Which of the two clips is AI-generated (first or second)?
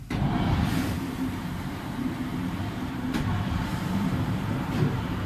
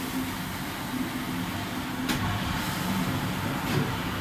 first